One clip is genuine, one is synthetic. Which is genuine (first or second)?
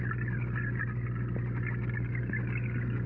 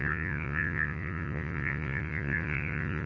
first